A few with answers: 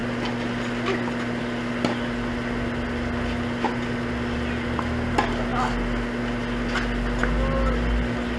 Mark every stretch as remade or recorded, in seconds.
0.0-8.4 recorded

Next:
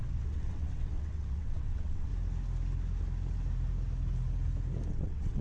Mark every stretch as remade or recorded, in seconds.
0.0-2.1 remade; 2.1-4.9 recorded; 4.9-5.4 remade

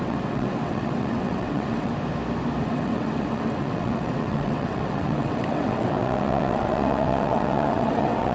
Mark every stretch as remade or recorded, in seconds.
0.0-1.9 remade; 1.9-2.6 recorded; 2.6-8.3 remade

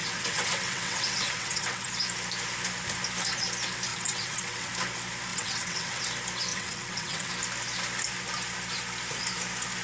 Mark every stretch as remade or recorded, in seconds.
0.0-1.9 remade; 1.9-3.9 recorded; 3.9-4.7 remade; 4.7-5.3 recorded; 5.3-6.0 remade; 6.0-6.5 recorded; 6.5-7.3 remade; 7.3-9.8 recorded

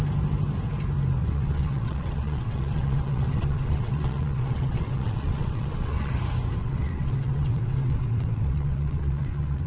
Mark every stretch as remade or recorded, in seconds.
0.0-1.2 recorded; 1.2-6.1 remade; 6.1-6.6 recorded; 6.6-9.7 remade

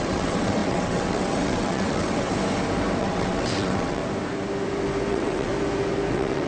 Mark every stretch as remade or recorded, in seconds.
0.0-2.3 remade; 2.3-3.0 recorded; 3.0-4.0 remade; 4.0-5.1 recorded; 5.1-5.5 remade; 5.5-6.1 recorded; 6.1-6.5 remade

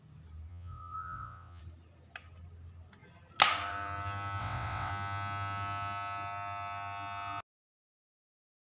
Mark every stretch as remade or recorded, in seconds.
0.0-0.5 recorded; 0.5-1.6 remade; 1.6-4.4 recorded; 4.4-4.9 remade; 4.9-8.8 recorded